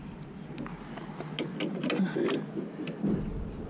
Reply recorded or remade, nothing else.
recorded